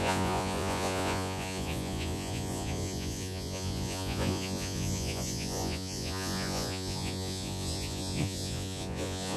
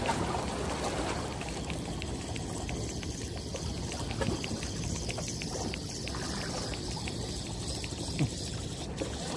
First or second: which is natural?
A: second